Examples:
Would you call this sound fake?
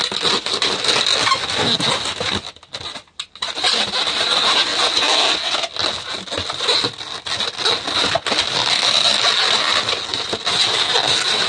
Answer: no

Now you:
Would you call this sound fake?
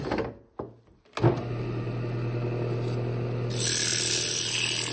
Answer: no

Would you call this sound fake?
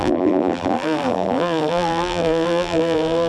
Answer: yes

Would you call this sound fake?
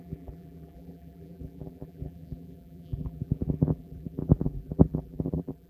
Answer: yes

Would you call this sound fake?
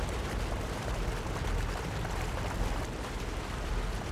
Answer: yes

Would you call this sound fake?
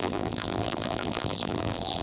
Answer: yes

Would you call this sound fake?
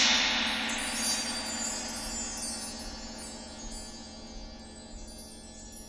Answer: no